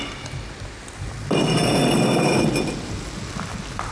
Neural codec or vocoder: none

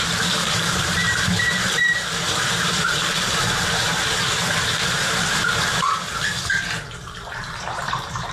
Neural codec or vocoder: vocoder, BigVGAN v2